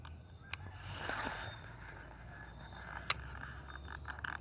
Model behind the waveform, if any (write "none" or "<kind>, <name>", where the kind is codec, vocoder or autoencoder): none